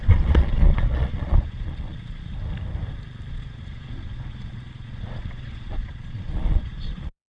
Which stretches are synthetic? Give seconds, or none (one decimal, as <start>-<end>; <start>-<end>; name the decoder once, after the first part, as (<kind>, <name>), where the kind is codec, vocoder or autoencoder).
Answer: 0.0-2.3 (vocoder, Vocos); 3.3-7.3

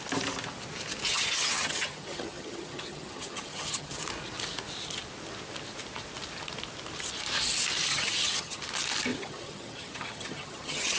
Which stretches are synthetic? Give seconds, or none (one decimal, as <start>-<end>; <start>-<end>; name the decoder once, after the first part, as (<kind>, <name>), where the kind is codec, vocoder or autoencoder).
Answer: 1.1-4.0 (vocoder, HiFi-GAN); 7.9-8.6; 9.1-11.0